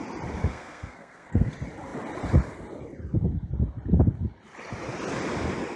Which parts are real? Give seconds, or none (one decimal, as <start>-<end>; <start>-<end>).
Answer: 0.0-0.4; 1.5-5.8